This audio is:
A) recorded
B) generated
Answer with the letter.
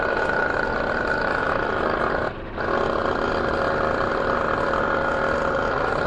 A